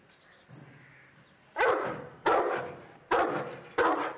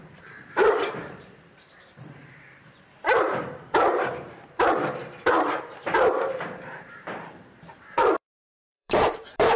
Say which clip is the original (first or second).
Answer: first